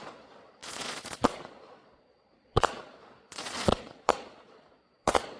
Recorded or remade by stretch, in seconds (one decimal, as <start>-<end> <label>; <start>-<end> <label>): 0.0-5.4 remade